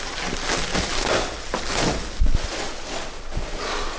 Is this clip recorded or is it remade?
recorded